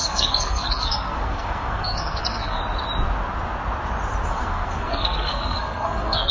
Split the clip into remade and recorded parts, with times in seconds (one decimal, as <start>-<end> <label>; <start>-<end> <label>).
0.0-2.6 remade; 2.6-4.3 recorded; 4.3-6.3 remade